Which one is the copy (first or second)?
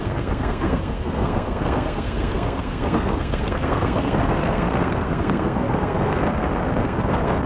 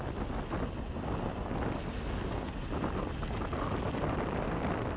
first